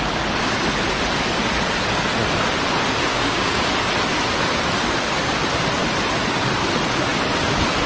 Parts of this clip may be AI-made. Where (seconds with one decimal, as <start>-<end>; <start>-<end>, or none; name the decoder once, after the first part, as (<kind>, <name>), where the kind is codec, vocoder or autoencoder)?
3.1-3.7 (codec, DAC)